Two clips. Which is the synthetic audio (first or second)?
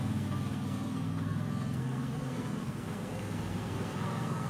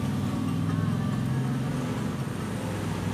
first